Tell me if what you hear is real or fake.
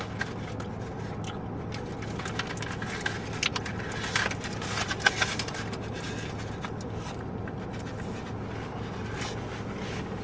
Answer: real